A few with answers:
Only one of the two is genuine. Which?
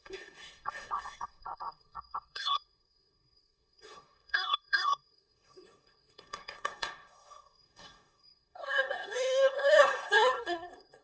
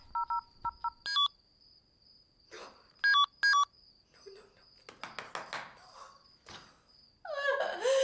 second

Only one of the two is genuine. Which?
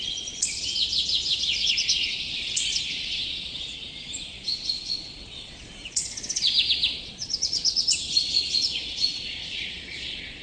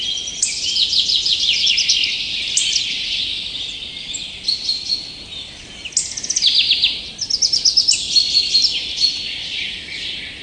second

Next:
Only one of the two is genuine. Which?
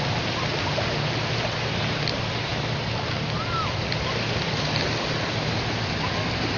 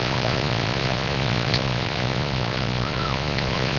first